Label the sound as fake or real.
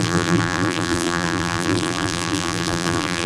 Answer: fake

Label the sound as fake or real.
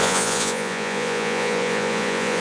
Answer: fake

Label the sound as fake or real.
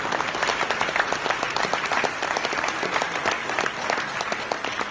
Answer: real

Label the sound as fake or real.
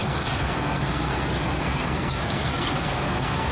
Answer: fake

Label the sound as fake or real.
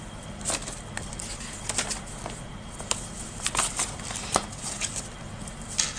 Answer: real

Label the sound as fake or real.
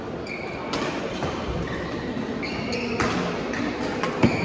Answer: real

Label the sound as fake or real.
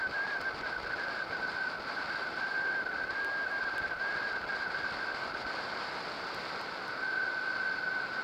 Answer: real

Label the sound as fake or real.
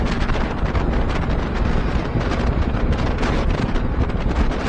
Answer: real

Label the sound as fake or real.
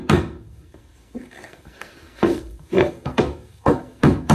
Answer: fake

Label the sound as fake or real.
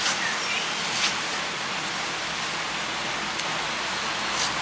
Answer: real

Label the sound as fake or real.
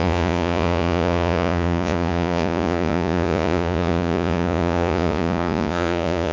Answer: fake